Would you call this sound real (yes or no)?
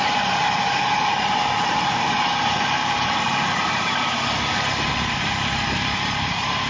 no